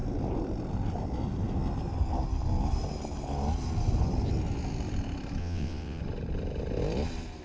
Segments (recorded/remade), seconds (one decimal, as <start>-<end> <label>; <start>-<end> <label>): 0.0-5.4 recorded; 5.4-6.0 remade; 6.0-7.4 recorded